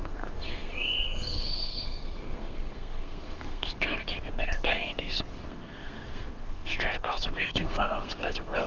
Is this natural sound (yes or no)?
no